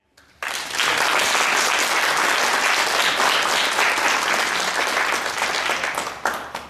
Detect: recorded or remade recorded